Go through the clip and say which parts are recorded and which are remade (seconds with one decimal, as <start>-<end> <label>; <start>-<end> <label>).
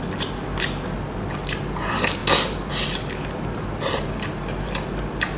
0.0-5.4 recorded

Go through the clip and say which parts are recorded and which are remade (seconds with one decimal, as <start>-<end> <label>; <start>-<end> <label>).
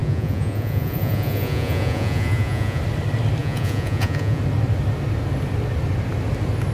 0.0-2.8 remade; 2.8-3.4 recorded; 3.4-4.4 remade; 4.4-6.7 recorded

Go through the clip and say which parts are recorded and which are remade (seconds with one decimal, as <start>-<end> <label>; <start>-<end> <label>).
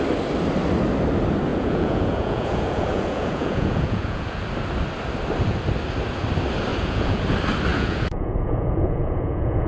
0.0-1.5 recorded; 1.5-4.5 remade; 4.5-6.7 recorded; 6.7-7.2 remade; 7.2-7.7 recorded; 7.7-9.7 remade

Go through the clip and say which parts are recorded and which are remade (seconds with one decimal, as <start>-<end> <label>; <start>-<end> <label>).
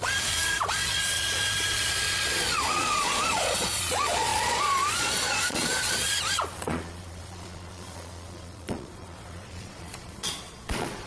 0.0-11.1 remade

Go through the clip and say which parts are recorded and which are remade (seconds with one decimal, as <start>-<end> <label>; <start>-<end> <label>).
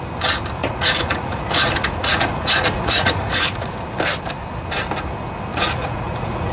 0.0-0.6 recorded; 0.6-3.8 remade; 3.8-5.5 recorded; 5.5-6.5 remade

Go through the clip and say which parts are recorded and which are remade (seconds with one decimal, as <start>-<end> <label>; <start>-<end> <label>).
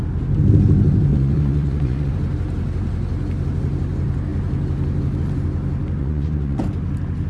0.0-1.1 recorded; 1.1-2.1 remade; 2.1-6.0 recorded; 6.0-6.6 remade; 6.6-7.3 recorded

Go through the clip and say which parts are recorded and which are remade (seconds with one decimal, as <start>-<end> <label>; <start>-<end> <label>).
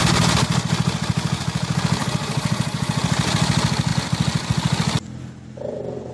0.0-2.0 recorded; 2.0-3.0 remade; 3.0-6.1 recorded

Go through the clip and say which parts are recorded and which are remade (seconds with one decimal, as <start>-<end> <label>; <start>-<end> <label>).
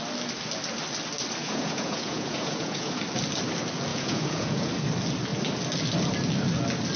0.0-1.4 recorded; 1.4-3.0 remade; 3.0-3.9 recorded; 3.9-4.7 remade; 4.7-7.0 recorded